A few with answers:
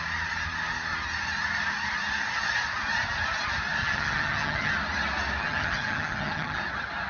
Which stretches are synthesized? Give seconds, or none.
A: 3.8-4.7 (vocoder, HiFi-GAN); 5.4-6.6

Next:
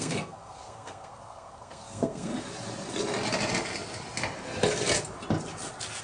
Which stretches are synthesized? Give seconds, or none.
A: 0.0-2.3 (codec, SNAC)

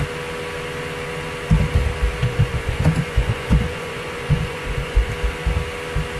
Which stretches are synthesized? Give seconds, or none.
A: 2.2-5.1 (vocoder, Vocos)

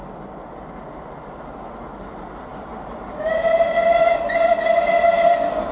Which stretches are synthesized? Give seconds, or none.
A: 1.9-3.7 (vocoder, BigVGAN v2)

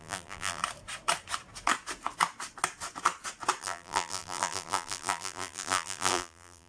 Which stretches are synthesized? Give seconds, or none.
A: 0.0-0.6 (vocoder, BigVGAN v2); 3.6-6.7